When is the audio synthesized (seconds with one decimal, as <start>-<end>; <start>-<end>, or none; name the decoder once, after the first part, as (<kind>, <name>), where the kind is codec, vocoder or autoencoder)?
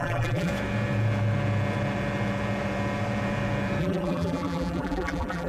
0.0-0.5 (vocoder, BigVGAN v2); 3.8-5.5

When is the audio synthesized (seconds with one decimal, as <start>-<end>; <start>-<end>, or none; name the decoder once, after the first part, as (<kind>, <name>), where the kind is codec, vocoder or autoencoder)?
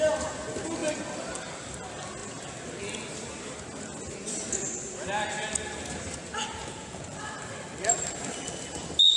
6.6-7.2 (vocoder, Vocos)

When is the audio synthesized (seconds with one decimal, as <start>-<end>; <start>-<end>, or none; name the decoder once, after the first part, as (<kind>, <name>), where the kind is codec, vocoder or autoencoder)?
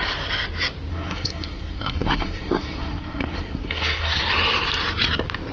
0.9-4.2 (codec, SNAC)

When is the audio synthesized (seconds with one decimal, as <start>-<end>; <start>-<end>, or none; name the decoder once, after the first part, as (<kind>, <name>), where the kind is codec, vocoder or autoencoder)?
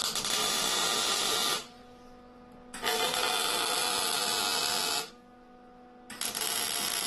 none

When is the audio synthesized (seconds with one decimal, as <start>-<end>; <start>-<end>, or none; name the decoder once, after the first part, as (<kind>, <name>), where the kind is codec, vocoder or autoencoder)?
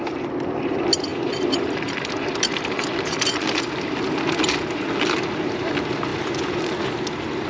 none